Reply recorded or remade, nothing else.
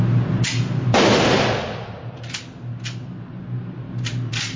recorded